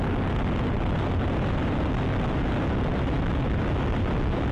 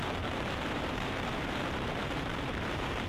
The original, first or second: first